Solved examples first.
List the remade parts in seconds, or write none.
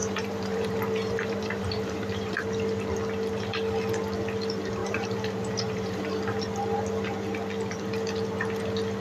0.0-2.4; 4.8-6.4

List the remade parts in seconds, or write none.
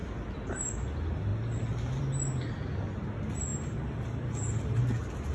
3.5-4.8